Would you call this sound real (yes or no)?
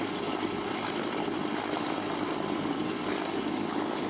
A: yes